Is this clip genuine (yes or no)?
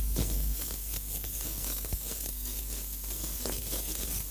no